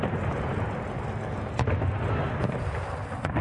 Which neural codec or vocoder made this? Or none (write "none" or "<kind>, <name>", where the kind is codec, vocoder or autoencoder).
none